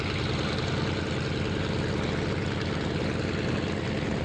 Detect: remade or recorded recorded